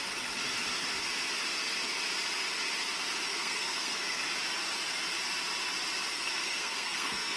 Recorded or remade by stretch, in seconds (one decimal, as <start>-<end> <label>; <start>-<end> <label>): 0.0-3.3 recorded; 3.3-4.2 remade; 4.2-6.1 recorded; 6.1-7.4 remade